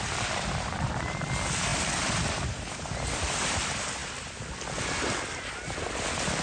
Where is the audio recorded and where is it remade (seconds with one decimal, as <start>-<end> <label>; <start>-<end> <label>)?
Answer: 0.0-6.4 recorded